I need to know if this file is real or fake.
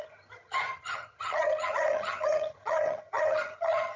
fake